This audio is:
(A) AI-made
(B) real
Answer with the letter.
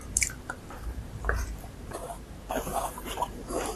A